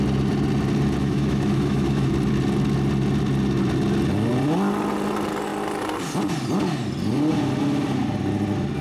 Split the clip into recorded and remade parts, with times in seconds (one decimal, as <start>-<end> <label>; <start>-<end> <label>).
0.0-1.0 recorded; 1.0-2.1 remade; 2.1-8.8 recorded